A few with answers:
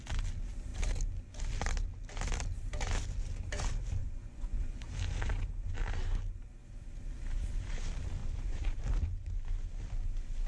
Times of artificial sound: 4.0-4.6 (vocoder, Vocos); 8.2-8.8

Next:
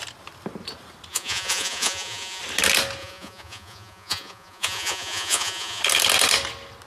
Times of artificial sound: 1.1-2.4 (vocoder, Vocos); 3.0-5.8